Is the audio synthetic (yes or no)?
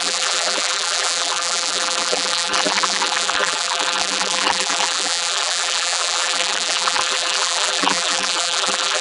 yes